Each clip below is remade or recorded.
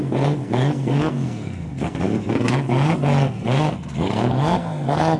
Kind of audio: remade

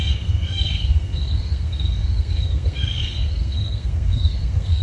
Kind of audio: remade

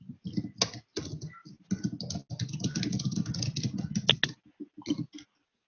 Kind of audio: recorded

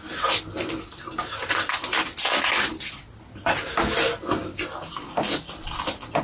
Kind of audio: recorded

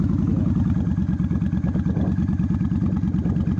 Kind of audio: recorded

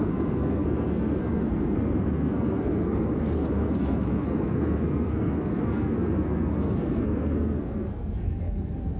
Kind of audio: remade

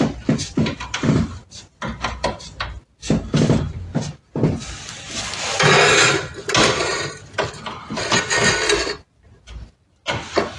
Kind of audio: recorded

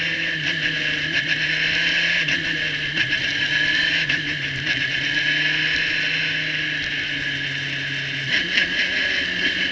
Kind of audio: recorded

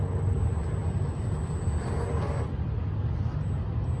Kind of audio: recorded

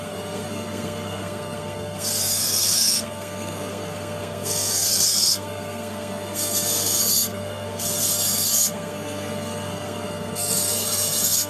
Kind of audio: remade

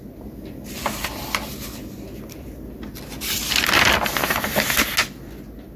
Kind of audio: recorded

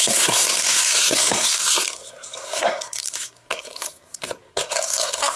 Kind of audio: remade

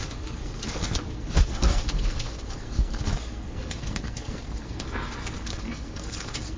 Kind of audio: remade